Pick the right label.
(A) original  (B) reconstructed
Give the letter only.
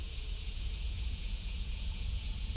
B